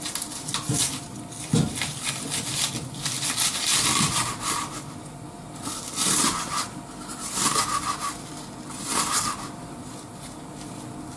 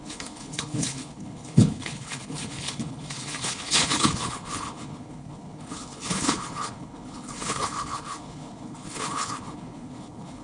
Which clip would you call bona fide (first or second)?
first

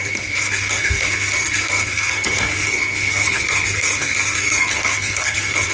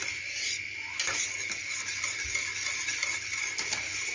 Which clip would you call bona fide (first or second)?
second